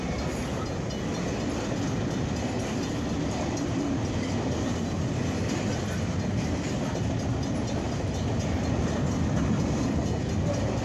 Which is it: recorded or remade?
recorded